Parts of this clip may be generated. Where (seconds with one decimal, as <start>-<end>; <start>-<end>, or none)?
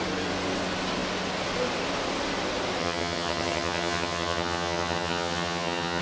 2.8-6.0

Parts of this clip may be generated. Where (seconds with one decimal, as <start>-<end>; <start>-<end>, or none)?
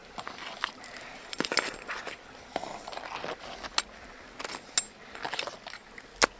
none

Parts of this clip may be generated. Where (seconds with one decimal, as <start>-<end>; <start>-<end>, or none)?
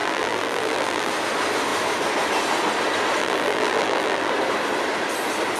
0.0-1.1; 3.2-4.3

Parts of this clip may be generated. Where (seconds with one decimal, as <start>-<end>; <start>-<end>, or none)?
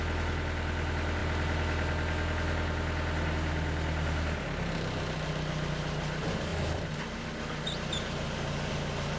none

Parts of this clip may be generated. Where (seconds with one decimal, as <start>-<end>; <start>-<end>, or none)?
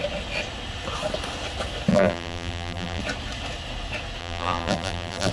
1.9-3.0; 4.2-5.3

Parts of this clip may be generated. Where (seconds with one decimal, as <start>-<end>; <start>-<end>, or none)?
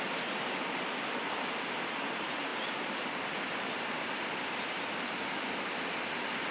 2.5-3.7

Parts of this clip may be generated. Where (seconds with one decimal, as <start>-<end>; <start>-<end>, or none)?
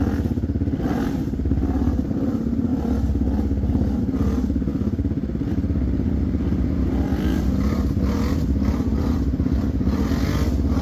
none